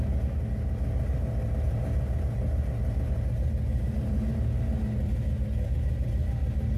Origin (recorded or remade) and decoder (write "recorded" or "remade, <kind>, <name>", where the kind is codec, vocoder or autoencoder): recorded